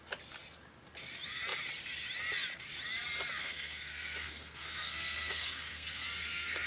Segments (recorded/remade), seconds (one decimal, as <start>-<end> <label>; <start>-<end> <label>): 0.0-3.4 recorded; 3.4-6.7 remade